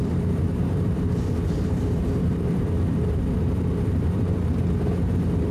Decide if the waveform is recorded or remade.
remade